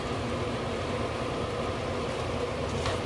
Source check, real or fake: real